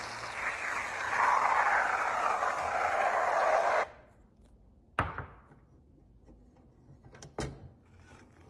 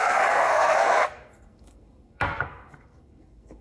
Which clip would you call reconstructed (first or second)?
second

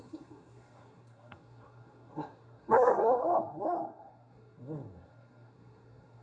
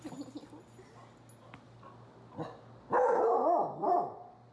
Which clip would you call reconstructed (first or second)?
first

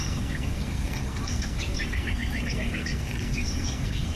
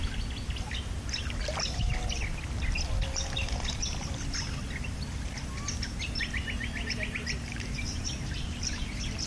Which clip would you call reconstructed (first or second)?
first